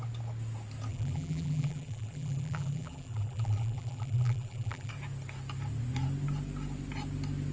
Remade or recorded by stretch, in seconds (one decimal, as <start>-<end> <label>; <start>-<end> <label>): 0.0-0.9 recorded; 0.9-4.9 remade; 4.9-7.5 recorded